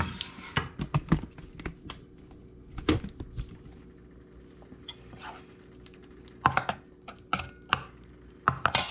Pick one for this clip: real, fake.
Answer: real